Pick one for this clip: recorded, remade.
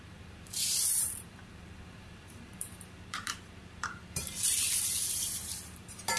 remade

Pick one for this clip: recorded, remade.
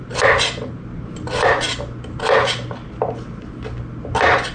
recorded